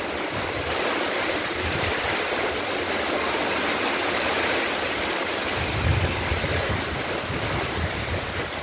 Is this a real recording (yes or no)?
yes